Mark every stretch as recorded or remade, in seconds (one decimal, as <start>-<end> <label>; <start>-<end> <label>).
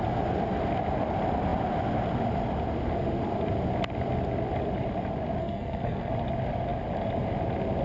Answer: 0.0-5.4 recorded; 5.4-6.1 remade; 6.1-7.8 recorded